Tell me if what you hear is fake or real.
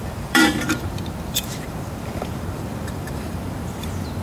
fake